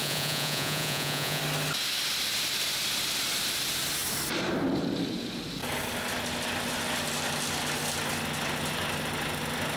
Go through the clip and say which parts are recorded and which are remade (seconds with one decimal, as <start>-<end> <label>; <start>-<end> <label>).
0.0-1.4 remade; 1.4-9.8 recorded